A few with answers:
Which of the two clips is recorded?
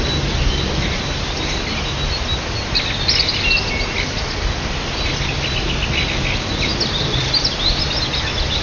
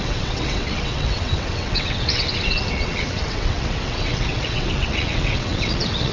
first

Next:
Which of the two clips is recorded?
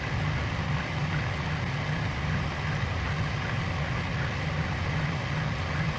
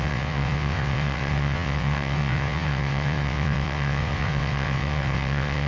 first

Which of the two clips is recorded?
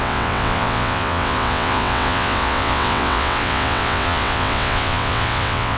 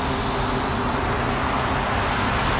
second